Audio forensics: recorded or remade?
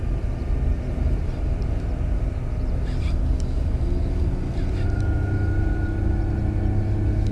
recorded